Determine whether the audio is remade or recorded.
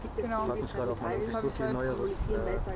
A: recorded